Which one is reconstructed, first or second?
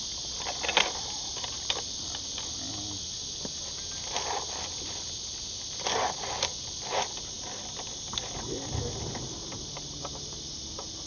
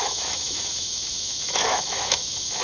second